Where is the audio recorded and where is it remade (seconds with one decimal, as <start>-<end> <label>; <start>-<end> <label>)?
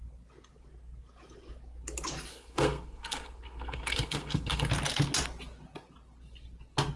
0.0-2.3 recorded; 2.3-4.7 remade; 4.7-7.0 recorded